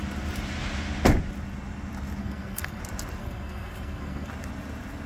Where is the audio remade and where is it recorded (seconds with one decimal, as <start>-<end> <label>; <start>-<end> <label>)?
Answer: 0.0-2.2 recorded; 2.2-2.8 remade; 2.8-3.2 recorded; 3.2-4.3 remade; 4.3-5.1 recorded